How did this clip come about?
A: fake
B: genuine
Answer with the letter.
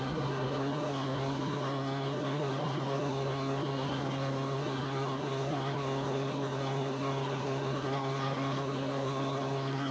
A